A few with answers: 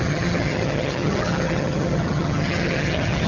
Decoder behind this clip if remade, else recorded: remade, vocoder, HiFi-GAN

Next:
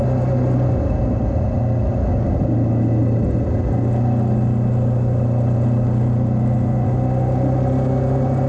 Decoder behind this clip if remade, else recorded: recorded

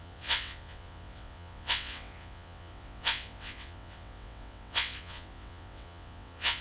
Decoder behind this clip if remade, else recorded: remade, vocoder, WaveNeXt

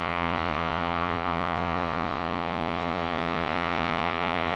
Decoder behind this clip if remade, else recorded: remade, vocoder, Vocos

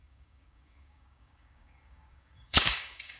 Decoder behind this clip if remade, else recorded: remade, codec, DAC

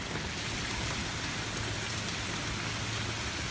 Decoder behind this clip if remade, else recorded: recorded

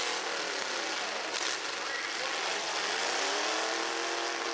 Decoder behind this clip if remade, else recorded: recorded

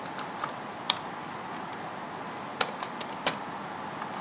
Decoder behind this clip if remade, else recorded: recorded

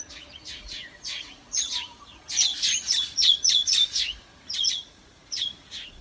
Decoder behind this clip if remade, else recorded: remade, vocoder, Vocos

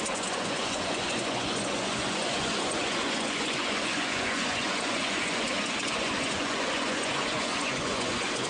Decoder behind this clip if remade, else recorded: remade, vocoder, Vocos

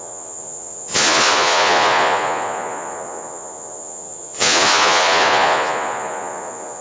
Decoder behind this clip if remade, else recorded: remade, vocoder, Vocos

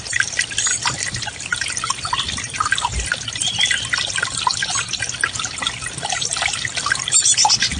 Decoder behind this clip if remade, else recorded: recorded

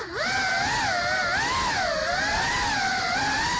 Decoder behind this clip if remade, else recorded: recorded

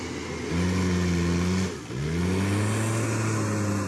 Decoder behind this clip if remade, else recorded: recorded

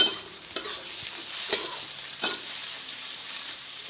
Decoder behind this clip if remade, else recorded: remade, vocoder, BigVGAN v2